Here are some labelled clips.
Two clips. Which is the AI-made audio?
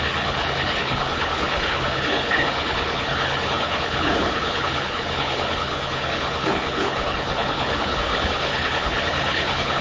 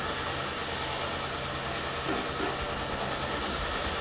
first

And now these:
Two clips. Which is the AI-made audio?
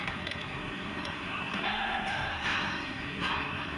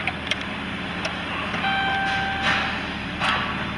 first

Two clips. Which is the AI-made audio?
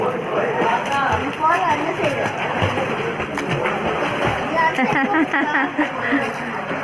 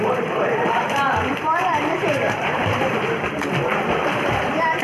second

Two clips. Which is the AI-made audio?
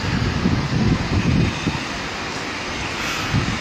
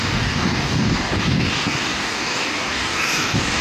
second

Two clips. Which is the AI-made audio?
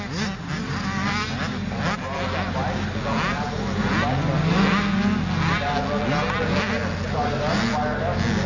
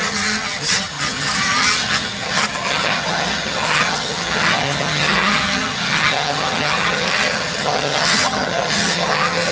second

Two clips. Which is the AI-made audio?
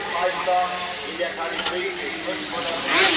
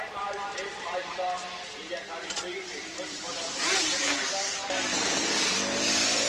second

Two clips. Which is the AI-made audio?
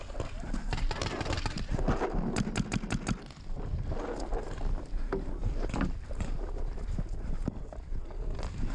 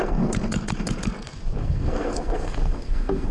second